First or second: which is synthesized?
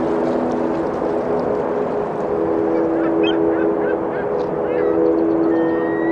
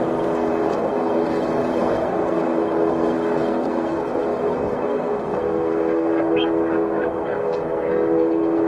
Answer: second